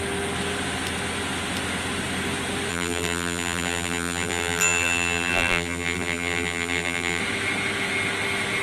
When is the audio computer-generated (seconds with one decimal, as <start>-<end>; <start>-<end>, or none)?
2.7-7.2